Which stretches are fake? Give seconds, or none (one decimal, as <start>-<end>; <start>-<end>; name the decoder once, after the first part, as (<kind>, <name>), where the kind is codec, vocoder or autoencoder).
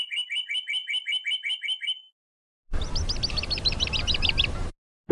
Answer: none